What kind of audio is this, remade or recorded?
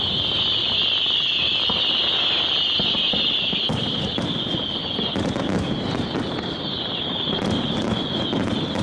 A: recorded